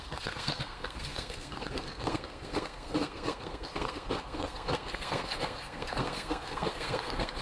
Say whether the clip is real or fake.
fake